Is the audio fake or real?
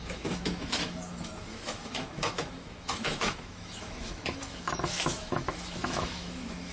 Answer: fake